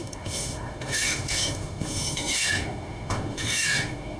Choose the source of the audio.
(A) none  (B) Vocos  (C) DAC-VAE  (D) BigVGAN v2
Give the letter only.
C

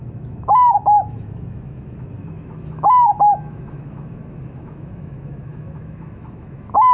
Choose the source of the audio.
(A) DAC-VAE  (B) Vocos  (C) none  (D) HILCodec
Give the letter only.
A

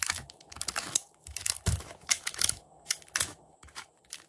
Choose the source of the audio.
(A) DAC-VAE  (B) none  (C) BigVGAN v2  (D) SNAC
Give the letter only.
A